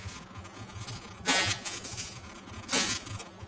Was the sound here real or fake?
fake